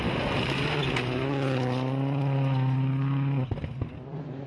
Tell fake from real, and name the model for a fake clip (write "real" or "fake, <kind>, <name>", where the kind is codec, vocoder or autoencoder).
real